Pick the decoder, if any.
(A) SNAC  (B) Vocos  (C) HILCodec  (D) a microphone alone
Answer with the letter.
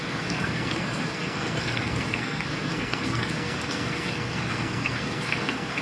A